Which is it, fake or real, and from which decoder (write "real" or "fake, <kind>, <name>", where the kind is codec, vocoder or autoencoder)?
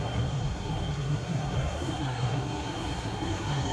fake, codec, SNAC